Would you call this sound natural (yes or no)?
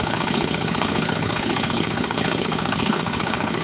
no